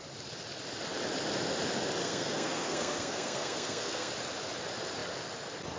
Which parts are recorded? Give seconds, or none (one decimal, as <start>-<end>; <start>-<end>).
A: 0.0-2.0; 4.1-5.8